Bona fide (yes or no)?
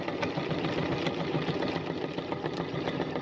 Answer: yes